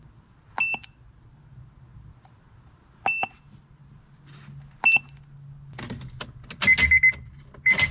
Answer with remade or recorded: recorded